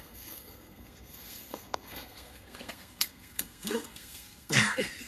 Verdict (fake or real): fake